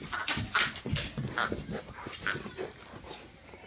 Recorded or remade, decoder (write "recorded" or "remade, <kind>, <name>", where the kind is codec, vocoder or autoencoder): recorded